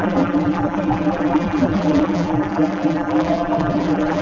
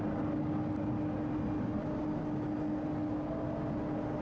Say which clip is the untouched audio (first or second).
second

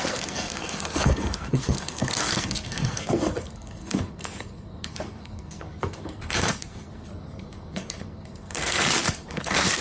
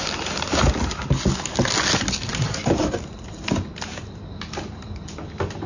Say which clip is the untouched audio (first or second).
second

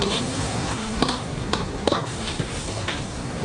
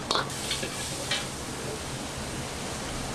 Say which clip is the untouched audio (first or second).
second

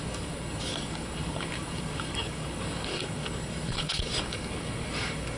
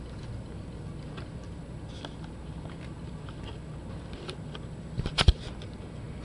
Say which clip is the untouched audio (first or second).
second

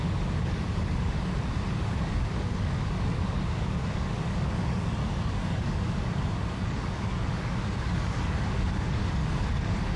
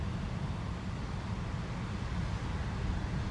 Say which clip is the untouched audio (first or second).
second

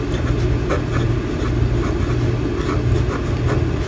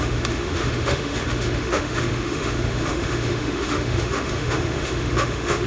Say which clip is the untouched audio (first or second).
first